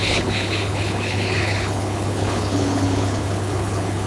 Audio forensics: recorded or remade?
remade